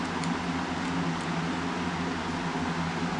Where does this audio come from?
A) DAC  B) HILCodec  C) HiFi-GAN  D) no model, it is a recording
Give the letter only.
D